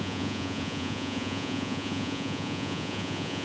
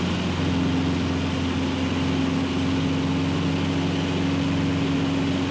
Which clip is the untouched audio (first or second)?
second